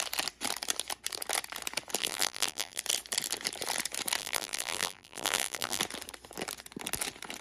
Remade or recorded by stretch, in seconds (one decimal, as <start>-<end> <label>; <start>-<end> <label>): 0.0-2.0 recorded; 2.0-2.8 remade; 2.8-4.2 recorded; 4.2-5.8 remade; 5.8-7.4 recorded

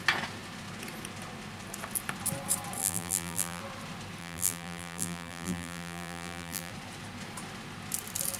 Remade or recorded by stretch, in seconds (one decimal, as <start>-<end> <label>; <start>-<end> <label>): 0.0-2.8 recorded; 2.8-3.6 remade; 3.6-4.2 recorded; 4.2-6.7 remade; 6.7-8.4 recorded

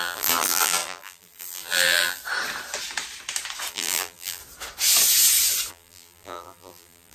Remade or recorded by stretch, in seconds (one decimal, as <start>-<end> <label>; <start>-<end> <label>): 0.0-2.2 remade; 2.2-3.7 recorded; 3.7-4.4 remade; 4.4-5.7 recorded; 5.7-7.1 remade

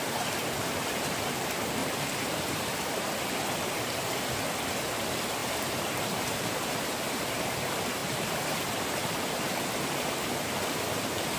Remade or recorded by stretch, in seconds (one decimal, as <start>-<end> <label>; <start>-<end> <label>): 0.0-1.8 recorded; 1.8-3.7 remade; 3.7-5.4 recorded; 5.4-7.5 remade; 7.5-8.0 recorded; 8.0-9.3 remade; 9.3-11.4 recorded

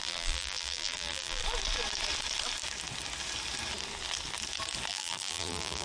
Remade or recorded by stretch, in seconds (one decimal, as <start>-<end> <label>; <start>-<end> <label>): 0.0-1.4 remade; 1.4-4.9 recorded; 4.9-5.8 remade

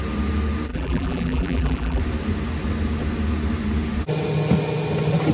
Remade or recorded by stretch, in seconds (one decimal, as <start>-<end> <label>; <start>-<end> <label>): 0.0-0.7 recorded; 0.7-2.0 remade; 2.0-5.3 recorded

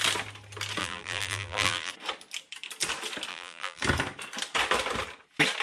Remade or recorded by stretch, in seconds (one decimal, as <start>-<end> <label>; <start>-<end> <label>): 0.0-0.8 recorded; 0.8-1.9 remade; 1.9-3.3 recorded; 3.3-3.8 remade; 3.8-5.6 recorded

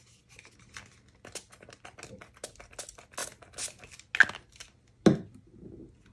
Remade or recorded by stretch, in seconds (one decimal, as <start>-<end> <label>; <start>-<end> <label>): 0.0-6.1 recorded